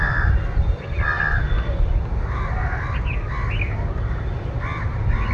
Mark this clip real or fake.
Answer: real